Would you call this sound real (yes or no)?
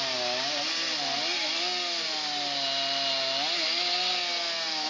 yes